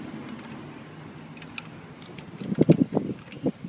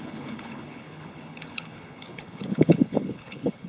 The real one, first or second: first